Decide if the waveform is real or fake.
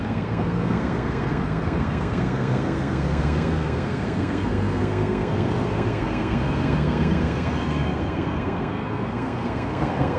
fake